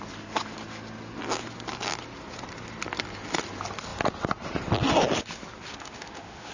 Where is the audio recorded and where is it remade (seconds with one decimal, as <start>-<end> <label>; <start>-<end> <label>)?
0.0-5.7 recorded; 5.7-6.5 remade